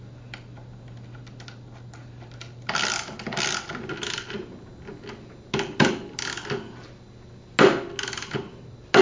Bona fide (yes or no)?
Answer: yes